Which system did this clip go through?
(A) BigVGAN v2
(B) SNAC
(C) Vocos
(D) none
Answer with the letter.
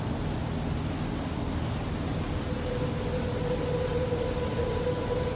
D